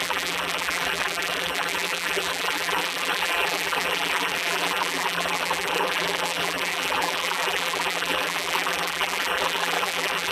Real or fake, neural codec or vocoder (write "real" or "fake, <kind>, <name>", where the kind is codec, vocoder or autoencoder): fake, vocoder, BigVGAN v2